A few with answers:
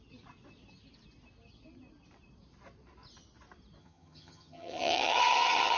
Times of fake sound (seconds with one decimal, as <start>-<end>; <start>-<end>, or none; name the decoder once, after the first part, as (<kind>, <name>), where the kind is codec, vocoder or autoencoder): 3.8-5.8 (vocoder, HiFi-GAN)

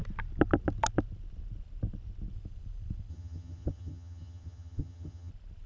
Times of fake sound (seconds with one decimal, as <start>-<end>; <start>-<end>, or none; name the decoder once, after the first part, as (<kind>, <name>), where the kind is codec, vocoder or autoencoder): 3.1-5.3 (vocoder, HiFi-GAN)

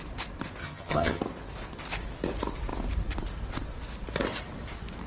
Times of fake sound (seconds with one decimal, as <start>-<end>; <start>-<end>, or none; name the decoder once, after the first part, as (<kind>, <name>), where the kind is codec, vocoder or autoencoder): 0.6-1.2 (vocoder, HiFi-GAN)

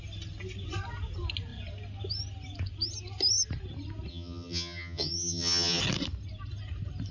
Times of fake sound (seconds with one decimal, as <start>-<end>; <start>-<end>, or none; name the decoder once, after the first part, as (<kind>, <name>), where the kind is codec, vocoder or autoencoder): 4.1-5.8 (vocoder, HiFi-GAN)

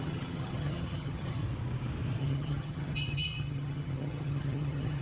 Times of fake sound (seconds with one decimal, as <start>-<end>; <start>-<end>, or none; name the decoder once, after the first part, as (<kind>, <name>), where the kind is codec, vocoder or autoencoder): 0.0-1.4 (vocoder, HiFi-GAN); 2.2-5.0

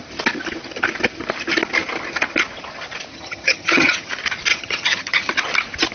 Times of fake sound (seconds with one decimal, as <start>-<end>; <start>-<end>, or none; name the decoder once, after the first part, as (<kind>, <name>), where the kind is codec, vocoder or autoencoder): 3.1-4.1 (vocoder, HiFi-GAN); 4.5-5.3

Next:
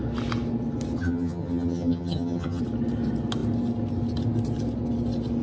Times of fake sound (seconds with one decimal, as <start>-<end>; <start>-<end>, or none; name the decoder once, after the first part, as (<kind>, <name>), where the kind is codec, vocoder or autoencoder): 1.0-2.6 (vocoder, HiFi-GAN)